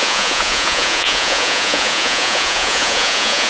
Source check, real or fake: fake